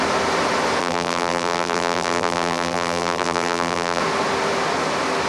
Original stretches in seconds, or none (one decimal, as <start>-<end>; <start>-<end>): 0.0-0.8; 4.0-5.3